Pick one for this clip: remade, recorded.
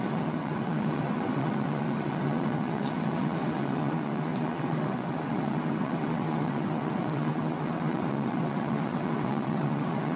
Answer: remade